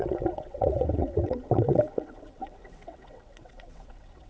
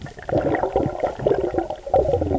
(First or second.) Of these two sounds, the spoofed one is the first